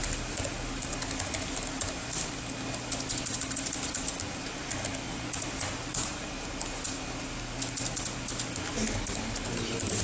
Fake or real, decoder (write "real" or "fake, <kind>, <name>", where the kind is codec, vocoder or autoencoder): real